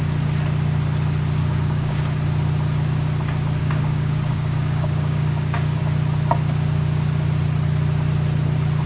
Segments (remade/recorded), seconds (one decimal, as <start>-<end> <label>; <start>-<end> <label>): 0.0-1.4 recorded; 1.4-2.0 remade; 2.0-3.6 recorded; 3.6-5.8 remade; 5.8-8.9 recorded

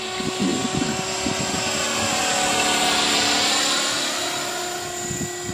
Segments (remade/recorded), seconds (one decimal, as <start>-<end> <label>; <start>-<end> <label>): 0.0-5.5 recorded

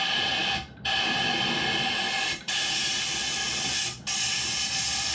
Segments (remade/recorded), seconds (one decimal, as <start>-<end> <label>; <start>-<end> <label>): 0.0-5.1 recorded

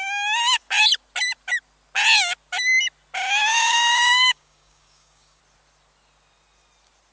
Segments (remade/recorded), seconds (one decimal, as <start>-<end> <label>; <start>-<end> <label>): 0.0-3.5 recorded; 3.5-5.4 remade; 5.4-7.1 recorded

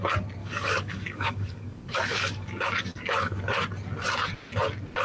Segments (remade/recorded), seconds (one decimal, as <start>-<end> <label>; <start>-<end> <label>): 0.0-0.4 recorded; 0.4-3.4 remade; 3.4-5.0 recorded

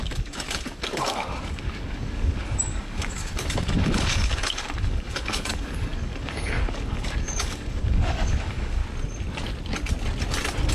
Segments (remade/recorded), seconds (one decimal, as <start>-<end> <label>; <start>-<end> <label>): 0.0-8.8 remade; 8.8-10.7 recorded

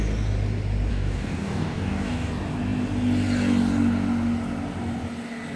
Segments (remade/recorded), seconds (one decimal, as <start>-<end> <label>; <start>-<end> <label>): 0.0-0.9 recorded; 0.9-2.3 remade; 2.3-5.6 recorded

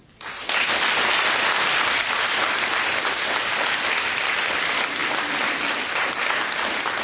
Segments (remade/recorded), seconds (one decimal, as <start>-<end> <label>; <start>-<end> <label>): 0.0-7.0 recorded